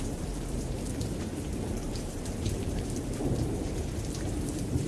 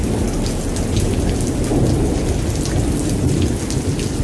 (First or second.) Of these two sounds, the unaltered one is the second